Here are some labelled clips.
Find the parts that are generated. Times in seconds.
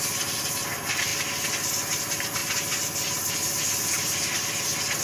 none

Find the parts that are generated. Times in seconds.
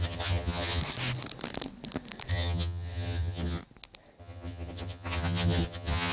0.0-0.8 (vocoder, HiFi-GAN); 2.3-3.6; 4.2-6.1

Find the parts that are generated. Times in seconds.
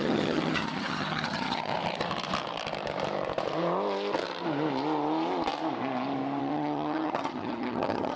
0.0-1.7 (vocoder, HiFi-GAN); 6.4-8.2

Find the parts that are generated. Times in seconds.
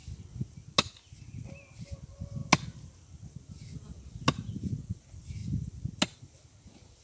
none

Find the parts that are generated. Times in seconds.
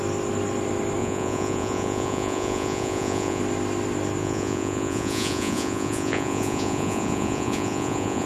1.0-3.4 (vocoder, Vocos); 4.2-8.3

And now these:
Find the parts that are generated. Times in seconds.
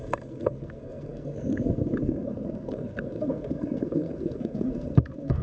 0.0-5.4 (codec, SNAC)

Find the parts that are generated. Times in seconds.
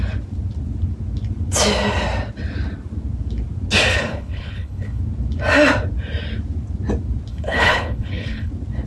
3.9-5.0 (codec, HILCodec); 7.3-8.5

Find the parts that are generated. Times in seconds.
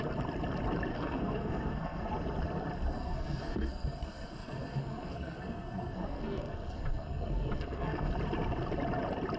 0.9-2.1 (codec, SNAC); 3.0-8.1